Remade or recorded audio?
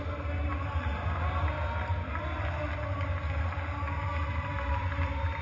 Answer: recorded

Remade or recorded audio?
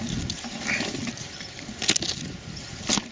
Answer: recorded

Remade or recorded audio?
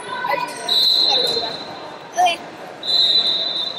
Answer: remade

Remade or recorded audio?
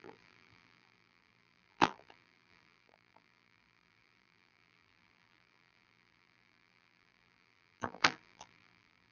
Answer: remade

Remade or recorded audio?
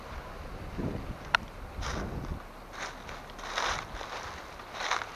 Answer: recorded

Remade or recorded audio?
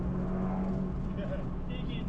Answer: recorded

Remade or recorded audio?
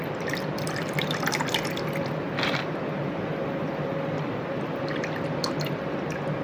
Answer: remade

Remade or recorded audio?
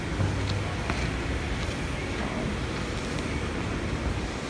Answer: recorded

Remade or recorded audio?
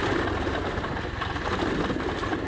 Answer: remade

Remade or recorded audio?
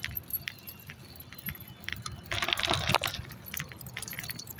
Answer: remade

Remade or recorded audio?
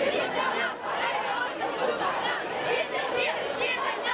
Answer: recorded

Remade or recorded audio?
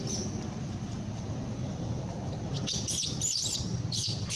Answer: remade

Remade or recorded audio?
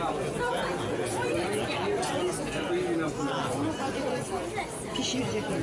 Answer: recorded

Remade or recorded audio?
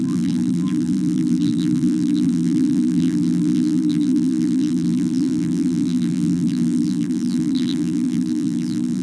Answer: remade